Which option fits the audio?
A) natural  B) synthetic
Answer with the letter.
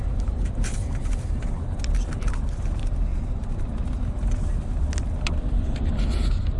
B